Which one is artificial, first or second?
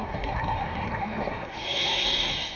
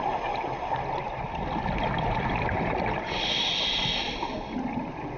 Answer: first